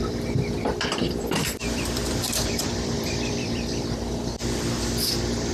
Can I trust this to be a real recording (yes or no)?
no